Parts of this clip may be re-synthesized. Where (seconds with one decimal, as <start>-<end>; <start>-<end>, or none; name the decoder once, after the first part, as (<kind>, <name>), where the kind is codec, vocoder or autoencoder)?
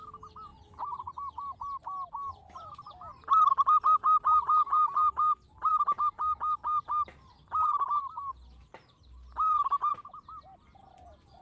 none